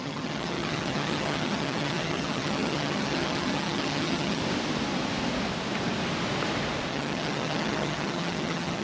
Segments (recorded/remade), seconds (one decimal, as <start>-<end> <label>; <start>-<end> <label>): 0.0-4.4 remade; 4.4-6.9 recorded; 6.9-8.8 remade